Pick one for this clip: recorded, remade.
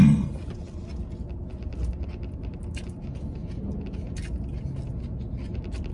recorded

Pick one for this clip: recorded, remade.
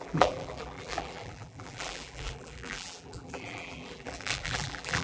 remade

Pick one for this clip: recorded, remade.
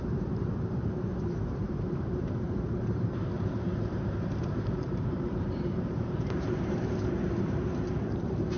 remade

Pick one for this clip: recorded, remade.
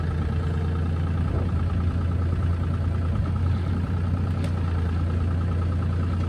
recorded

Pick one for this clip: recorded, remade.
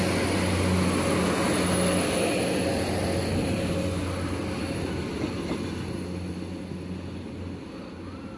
recorded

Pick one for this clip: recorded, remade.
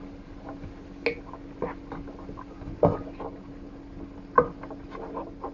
recorded